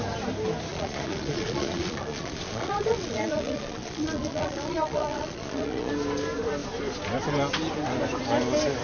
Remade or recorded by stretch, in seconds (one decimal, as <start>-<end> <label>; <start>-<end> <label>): 0.0-0.7 recorded; 0.7-5.9 remade; 5.9-8.8 recorded